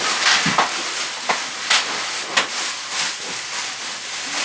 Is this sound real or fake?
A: real